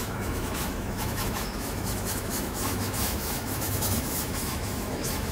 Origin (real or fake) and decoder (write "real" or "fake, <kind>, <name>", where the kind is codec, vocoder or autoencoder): fake, autoencoder, DAC-VAE